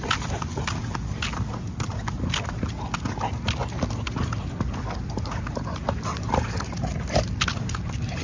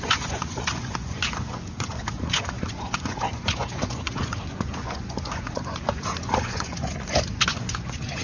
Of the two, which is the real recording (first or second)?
first